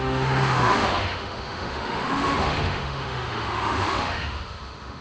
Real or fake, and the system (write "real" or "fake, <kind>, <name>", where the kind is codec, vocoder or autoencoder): fake, autoencoder, DAC-VAE